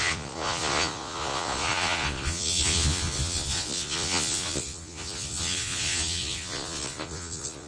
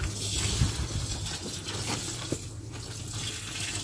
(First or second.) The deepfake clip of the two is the first